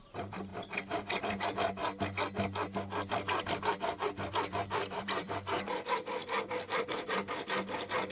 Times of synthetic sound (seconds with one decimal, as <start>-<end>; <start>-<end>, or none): 0.0-1.8; 4.3-6.2; 6.9-8.1